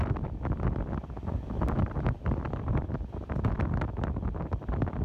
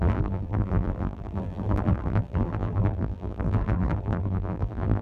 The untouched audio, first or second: first